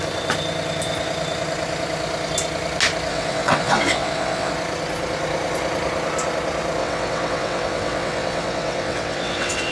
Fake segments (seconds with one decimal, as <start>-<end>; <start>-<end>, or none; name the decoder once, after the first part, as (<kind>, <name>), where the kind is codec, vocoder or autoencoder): 3.1-4.5 (vocoder, WaveNeXt); 6.8-9.7